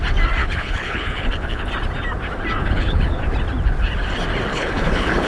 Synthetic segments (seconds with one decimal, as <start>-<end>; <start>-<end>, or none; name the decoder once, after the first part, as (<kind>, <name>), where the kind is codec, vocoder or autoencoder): 0.4-1.7 (codec, HILCodec); 2.6-3.2; 4.5-5.3